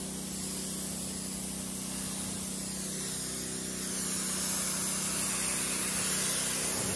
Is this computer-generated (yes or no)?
no